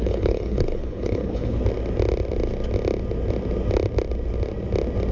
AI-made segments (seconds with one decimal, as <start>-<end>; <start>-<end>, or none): 0.0-1.6